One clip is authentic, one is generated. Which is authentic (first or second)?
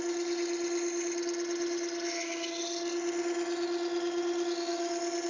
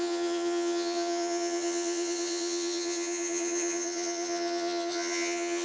first